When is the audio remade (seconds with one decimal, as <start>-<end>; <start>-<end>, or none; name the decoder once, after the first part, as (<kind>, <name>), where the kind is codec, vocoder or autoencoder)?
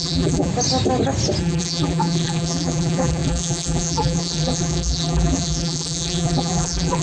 0.0-0.5 (vocoder, BigVGAN v2); 1.4-7.0